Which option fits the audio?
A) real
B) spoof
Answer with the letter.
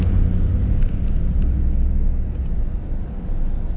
A